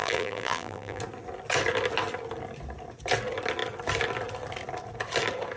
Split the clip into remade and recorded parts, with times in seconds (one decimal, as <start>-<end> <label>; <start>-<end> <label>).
0.0-1.0 remade; 1.0-5.6 recorded